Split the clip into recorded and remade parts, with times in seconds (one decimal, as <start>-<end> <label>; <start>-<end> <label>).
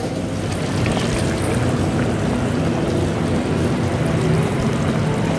0.0-5.4 recorded